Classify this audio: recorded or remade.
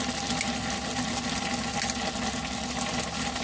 recorded